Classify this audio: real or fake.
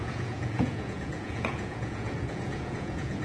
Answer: fake